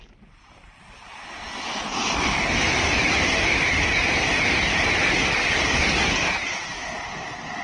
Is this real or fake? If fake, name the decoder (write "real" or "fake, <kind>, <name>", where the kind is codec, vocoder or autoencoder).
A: real